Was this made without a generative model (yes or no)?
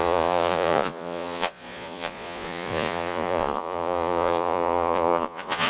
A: no